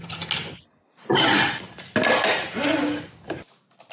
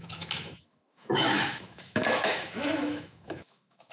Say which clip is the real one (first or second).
first